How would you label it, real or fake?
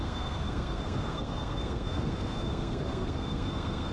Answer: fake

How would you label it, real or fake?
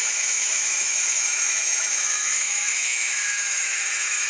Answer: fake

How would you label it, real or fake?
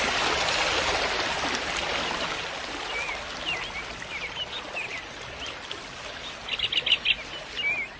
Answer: real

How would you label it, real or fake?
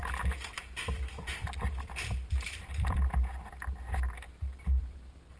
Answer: real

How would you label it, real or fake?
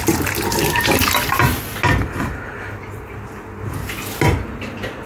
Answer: real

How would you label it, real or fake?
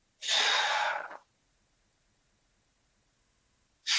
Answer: fake